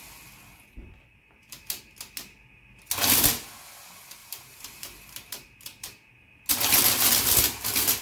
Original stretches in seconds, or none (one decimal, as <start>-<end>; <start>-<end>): 0.0-0.5; 1.8-4.2; 6.4-8.0